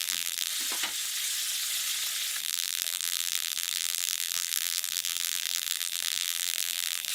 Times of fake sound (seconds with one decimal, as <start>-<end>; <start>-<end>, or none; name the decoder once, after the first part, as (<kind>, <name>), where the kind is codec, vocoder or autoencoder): 0.0-0.5 (vocoder, BigVGAN v2); 2.4-7.1